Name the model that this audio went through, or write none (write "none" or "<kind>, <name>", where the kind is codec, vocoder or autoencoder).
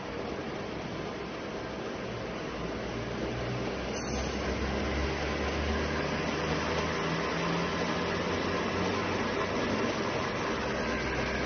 none